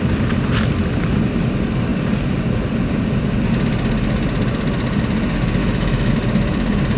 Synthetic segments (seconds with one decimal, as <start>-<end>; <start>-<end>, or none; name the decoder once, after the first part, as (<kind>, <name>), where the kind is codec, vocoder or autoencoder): 5.6-6.1 (autoencoder, DAC-VAE)